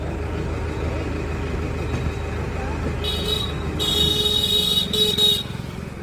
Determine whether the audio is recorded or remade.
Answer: recorded